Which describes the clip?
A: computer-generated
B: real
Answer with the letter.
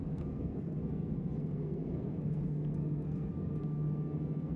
A